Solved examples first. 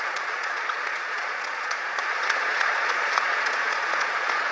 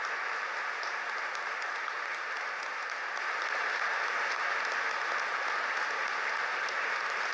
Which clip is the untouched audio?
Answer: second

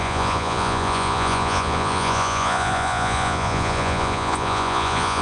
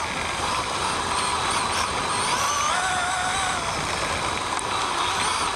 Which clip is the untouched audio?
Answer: second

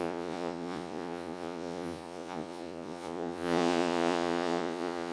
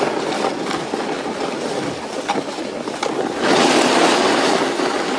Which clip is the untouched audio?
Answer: second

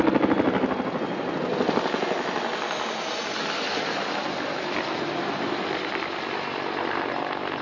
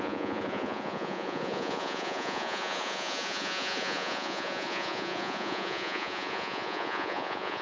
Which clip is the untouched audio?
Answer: first